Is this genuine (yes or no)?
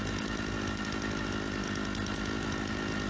yes